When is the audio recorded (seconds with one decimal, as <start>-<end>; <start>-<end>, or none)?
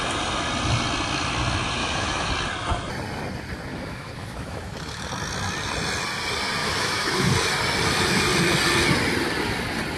0.0-1.8; 2.3-3.7; 5.1-6.6; 7.3-10.0